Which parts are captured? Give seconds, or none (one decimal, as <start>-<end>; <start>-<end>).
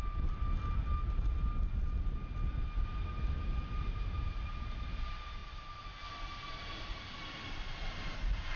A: 0.0-8.6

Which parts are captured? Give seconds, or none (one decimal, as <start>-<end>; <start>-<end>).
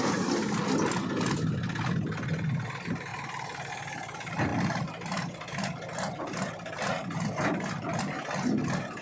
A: 0.0-4.5; 8.0-9.0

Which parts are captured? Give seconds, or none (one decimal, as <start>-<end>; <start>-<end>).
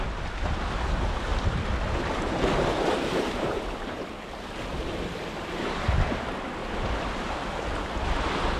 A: 0.0-1.3; 5.6-6.6; 7.4-8.6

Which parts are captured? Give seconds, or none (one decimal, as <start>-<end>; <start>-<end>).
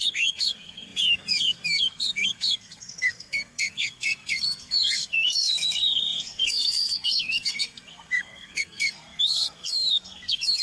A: none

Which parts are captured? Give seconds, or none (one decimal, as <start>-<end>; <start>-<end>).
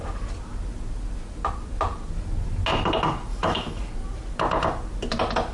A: 0.0-3.3; 3.8-5.5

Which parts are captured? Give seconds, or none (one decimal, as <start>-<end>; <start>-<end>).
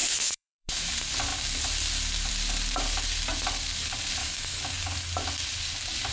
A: 0.9-4.2; 4.7-6.1